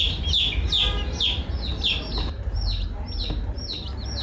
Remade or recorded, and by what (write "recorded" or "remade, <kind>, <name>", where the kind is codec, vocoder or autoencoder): recorded